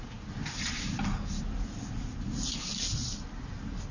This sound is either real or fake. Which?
real